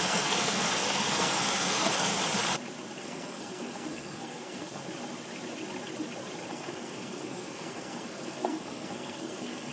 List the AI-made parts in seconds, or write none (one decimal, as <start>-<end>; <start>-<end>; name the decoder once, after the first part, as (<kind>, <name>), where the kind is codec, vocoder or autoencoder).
0.0-2.1 (codec, SNAC); 3.0-4.8; 6.5-9.7